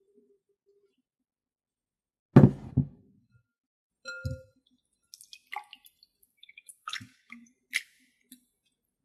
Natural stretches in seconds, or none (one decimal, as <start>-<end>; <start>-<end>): 0.0-6.2; 7.5-9.0